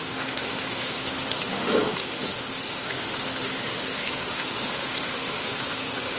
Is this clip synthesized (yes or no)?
yes